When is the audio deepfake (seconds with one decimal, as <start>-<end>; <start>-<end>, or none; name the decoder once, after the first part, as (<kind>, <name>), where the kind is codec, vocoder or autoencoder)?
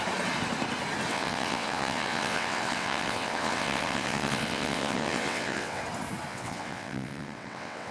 1.1-5.8 (vocoder, WaveNeXt); 6.3-7.9